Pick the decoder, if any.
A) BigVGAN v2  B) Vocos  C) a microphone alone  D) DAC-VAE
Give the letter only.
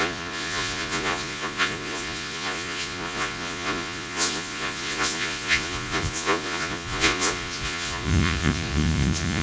B